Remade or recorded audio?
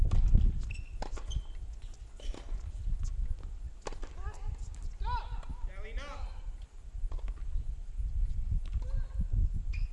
recorded